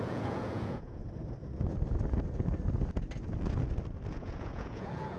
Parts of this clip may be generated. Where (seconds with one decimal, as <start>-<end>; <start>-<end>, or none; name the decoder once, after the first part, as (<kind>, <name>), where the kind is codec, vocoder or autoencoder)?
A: 0.0-1.0 (vocoder, Vocos); 4.1-5.2